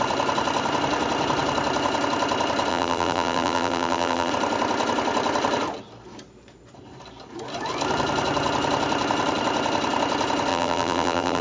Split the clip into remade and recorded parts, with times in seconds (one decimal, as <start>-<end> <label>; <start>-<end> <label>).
0.0-2.7 recorded; 2.7-4.3 remade; 4.3-10.5 recorded; 10.5-11.4 remade